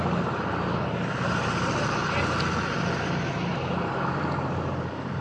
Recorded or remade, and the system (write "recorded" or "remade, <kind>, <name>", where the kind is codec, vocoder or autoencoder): recorded